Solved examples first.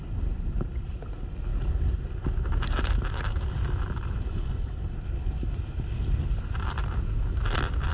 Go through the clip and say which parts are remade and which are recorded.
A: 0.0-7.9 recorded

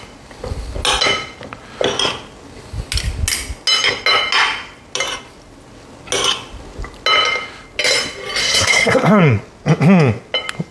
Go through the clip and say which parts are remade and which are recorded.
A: 0.0-8.4 recorded; 8.4-9.4 remade; 9.4-10.7 recorded

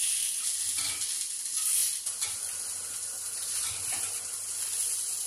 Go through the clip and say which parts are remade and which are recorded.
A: 0.0-5.3 recorded